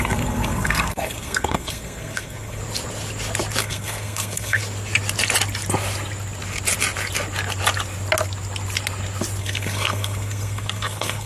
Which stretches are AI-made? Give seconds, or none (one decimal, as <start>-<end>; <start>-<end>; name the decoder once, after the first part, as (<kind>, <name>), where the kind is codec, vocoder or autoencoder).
0.0-2.6 (codec, SNAC); 3.6-4.6; 9.4-11.3